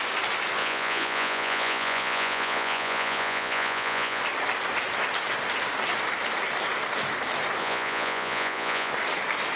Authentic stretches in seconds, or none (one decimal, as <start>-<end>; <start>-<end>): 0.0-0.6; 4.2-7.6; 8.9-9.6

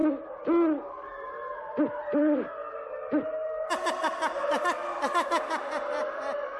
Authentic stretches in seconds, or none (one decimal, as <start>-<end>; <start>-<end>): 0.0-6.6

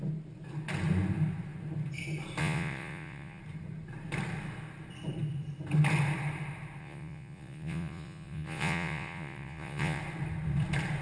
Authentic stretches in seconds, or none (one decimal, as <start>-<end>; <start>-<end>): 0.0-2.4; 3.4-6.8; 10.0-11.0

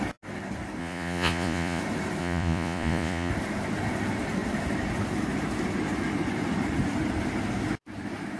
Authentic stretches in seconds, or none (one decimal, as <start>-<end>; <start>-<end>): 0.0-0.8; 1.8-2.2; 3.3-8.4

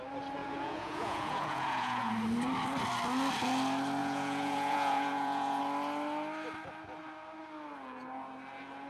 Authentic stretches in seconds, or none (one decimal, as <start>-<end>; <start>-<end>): 0.0-0.4; 2.1-4.0; 5.6-8.9

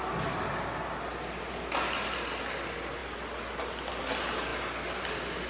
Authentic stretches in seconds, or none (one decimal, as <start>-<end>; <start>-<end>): 0.0-5.5

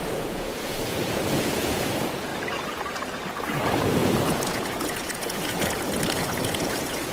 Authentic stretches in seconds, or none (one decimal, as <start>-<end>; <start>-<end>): 2.3-3.6